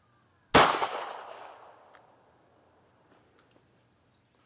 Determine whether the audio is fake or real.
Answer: real